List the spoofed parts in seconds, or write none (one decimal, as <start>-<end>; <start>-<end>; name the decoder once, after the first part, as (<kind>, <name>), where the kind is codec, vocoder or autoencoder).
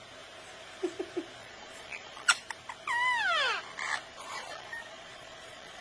1.4-2.4 (vocoder, Vocos); 4.1-5.8